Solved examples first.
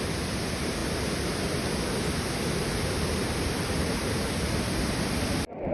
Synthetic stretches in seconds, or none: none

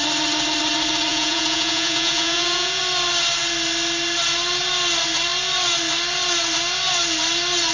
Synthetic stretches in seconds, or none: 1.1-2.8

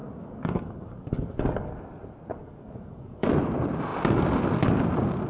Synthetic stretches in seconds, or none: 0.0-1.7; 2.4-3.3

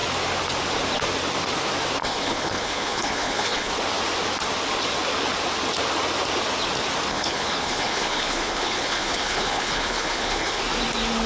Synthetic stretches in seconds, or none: 2.0-3.7; 7.1-10.6

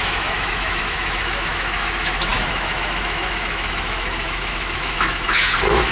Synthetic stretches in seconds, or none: 0.0-5.9

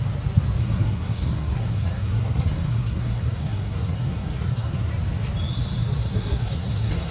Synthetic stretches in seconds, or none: 0.6-4.9; 6.0-7.1